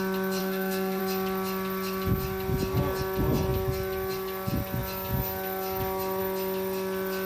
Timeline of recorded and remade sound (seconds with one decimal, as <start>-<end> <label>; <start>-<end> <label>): 0.0-0.4 recorded; 0.4-1.0 remade; 1.0-7.3 recorded

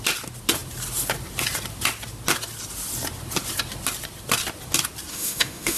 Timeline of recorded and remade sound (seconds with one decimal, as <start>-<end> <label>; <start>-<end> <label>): 0.0-5.1 recorded; 5.1-5.8 remade